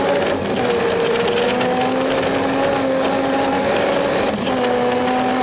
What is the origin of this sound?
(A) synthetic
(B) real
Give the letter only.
B